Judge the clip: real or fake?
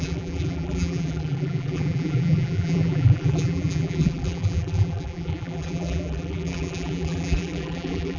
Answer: fake